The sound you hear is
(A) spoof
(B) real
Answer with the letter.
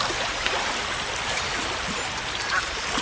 A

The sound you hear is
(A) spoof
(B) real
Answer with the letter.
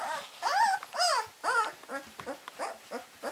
B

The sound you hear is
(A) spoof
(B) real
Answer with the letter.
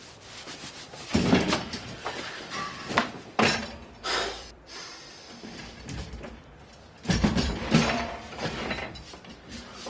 A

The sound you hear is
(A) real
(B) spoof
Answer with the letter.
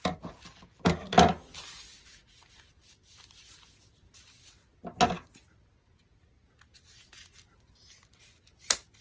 A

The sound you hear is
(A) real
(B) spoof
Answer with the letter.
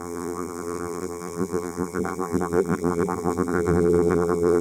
B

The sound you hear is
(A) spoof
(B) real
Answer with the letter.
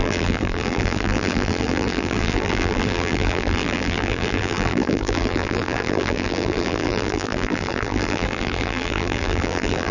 A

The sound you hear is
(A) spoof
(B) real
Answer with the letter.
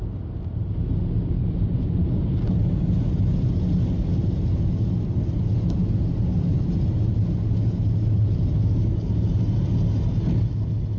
B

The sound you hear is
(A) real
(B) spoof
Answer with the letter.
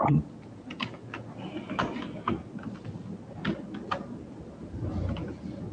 A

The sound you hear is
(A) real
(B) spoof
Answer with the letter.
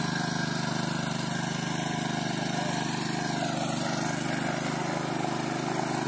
A